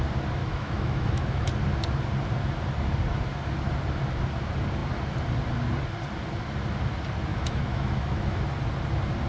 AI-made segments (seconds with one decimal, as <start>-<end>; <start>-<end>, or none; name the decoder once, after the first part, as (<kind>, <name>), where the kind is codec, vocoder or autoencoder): 0.4-1.5 (autoencoder, DAC-VAE); 7.3-8.4